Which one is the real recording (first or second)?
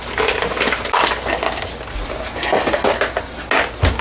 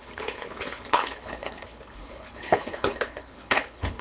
first